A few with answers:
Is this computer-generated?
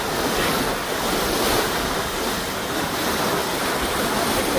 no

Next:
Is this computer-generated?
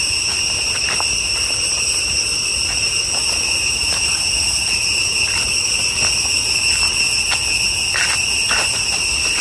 no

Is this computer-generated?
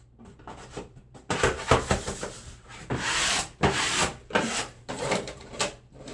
yes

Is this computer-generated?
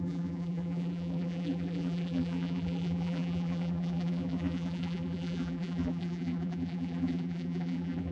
yes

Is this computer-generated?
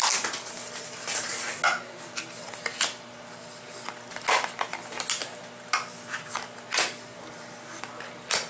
no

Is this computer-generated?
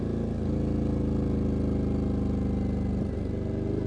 no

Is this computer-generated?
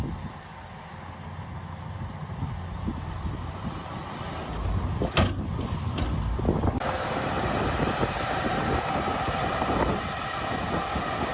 no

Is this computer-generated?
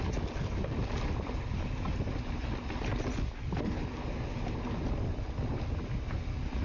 no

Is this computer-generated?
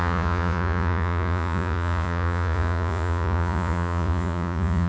yes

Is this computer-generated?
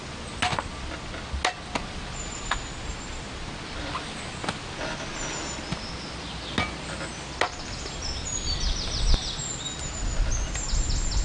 no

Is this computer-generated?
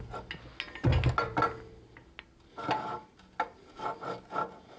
no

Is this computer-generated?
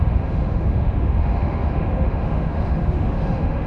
yes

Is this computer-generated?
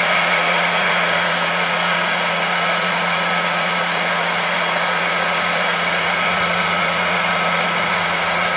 yes